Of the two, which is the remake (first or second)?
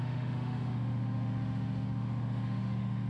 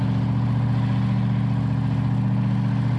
first